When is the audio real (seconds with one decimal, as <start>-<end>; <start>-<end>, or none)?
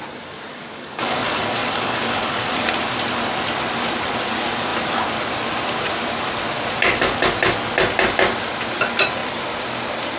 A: 0.0-0.5; 2.5-10.2